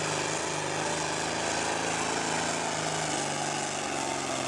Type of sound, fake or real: real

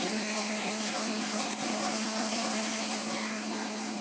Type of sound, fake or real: fake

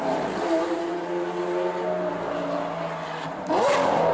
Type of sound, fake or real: real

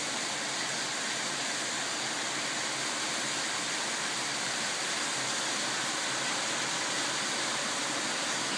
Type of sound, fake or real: real